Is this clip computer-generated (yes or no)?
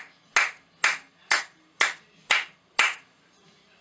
no